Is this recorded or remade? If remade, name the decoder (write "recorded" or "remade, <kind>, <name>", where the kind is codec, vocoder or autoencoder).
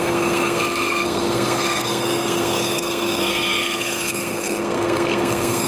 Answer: remade, codec, SNAC